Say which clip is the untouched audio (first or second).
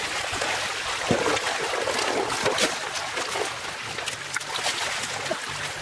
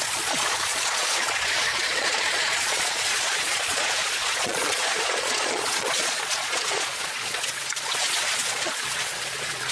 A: first